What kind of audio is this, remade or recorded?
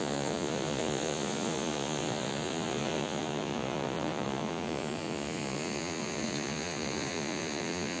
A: remade